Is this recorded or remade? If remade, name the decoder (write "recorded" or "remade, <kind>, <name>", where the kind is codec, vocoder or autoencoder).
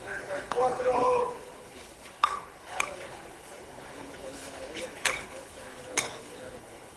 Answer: remade, codec, HILCodec